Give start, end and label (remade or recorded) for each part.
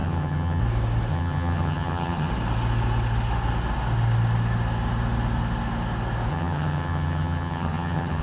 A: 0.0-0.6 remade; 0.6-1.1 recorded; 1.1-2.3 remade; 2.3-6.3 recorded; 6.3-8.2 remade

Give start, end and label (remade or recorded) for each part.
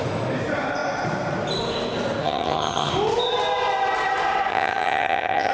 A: 0.0-2.2 recorded; 2.2-2.9 remade; 2.9-4.5 recorded; 4.5-5.5 remade